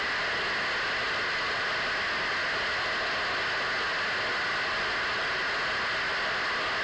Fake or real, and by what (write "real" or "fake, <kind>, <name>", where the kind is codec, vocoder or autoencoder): real